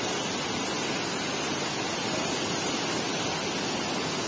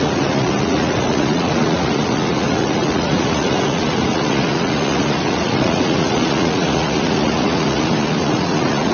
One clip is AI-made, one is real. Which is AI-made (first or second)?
second